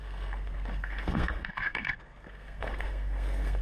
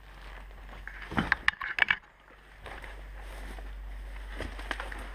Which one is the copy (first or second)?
first